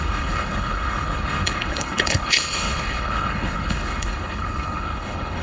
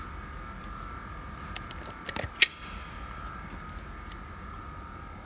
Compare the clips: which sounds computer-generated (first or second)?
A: first